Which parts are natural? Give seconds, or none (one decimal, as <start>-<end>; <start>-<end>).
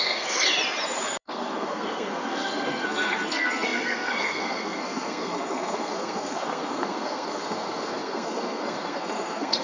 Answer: 0.5-1.2